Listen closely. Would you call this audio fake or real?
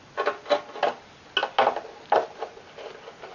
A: real